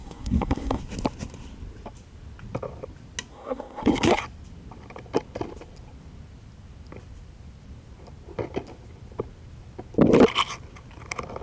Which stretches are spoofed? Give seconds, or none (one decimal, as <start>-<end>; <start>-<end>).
0.0-0.8; 3.3-4.2